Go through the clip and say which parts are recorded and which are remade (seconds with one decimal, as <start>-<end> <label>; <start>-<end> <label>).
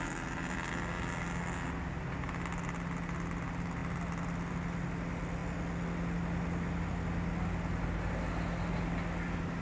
0.0-9.6 recorded